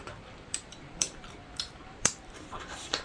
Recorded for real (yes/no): no